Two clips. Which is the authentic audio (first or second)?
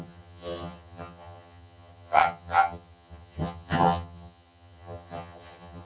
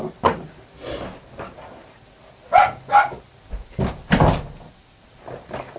second